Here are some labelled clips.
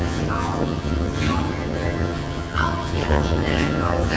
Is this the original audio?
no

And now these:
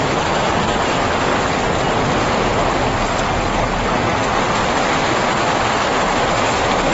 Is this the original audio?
yes